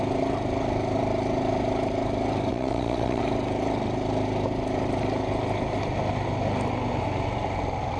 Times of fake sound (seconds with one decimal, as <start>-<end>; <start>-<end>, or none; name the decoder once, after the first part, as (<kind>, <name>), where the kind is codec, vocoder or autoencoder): 2.5-3.2 (vocoder, WaveNeXt)